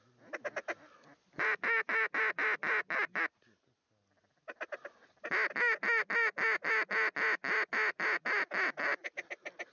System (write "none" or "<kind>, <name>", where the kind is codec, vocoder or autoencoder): none